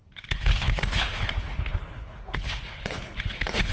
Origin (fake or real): fake